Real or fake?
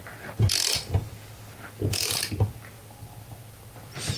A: real